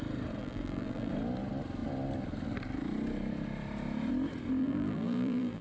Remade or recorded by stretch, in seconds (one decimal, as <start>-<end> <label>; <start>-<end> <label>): 0.0-0.4 recorded; 0.4-1.1 remade; 1.1-4.6 recorded; 4.6-5.6 remade